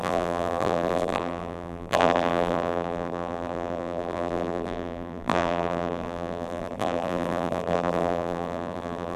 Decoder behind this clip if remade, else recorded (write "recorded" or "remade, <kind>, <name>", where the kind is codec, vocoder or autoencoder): remade, vocoder, BigVGAN v2